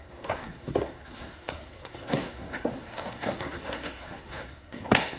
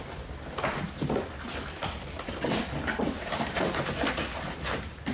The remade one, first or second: first